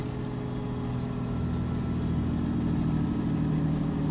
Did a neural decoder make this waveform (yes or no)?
no